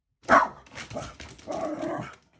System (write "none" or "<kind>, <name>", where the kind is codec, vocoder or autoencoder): none